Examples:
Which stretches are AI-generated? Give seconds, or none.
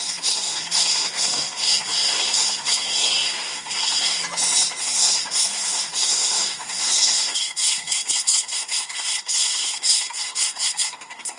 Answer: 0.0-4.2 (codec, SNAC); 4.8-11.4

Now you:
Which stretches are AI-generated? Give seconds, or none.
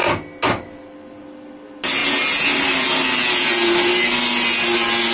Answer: none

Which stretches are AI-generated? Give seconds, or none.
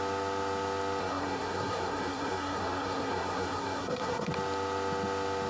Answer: 1.0-4.3 (codec, SNAC)